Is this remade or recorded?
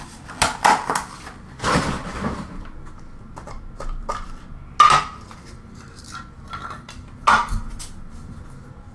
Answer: recorded